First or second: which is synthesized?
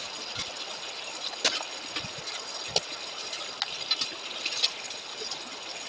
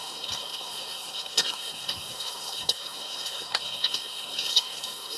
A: second